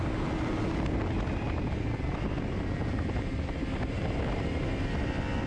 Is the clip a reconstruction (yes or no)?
no